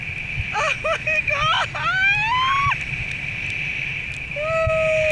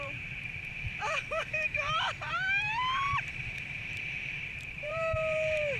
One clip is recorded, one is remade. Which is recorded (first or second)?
first